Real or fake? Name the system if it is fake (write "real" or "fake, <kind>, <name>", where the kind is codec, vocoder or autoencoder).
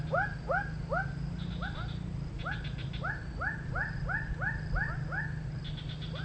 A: real